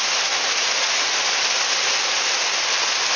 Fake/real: real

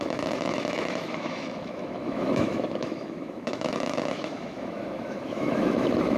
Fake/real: fake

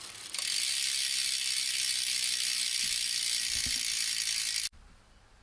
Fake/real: real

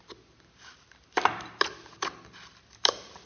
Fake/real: real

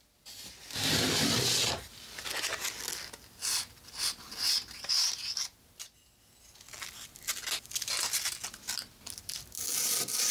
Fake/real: real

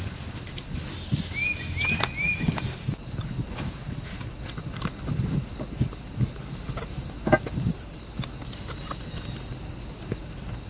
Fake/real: real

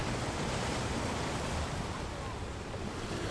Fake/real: real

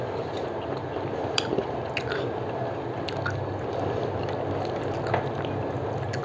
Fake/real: real